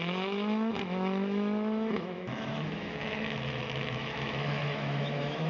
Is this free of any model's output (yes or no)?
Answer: no